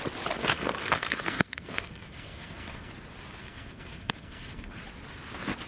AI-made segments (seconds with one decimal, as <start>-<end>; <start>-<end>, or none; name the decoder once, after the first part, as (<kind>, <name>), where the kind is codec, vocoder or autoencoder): 0.4-2.9 (codec, SNAC); 3.4-4.8